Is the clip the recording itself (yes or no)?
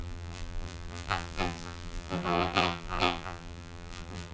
no